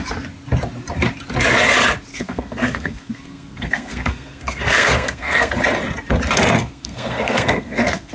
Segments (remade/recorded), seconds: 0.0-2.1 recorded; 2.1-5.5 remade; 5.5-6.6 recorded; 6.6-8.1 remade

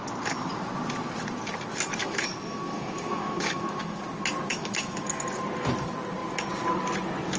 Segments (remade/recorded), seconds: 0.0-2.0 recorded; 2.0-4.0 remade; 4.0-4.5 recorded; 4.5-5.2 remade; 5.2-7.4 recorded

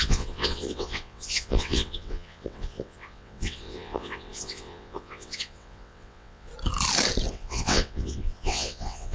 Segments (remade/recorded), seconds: 0.0-6.5 remade; 6.5-7.3 recorded; 7.3-9.1 remade

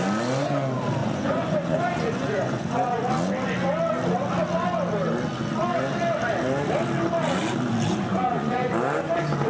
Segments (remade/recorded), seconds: 0.0-1.0 recorded; 1.0-3.0 remade; 3.0-8.1 recorded; 8.1-8.7 remade; 8.7-9.5 recorded

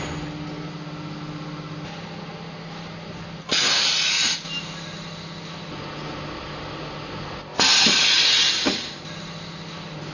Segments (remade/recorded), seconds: 0.0-10.1 recorded

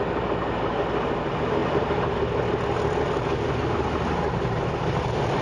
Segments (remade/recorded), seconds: 0.0-5.4 recorded